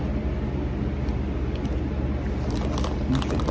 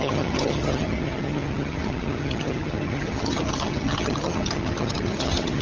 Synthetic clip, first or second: second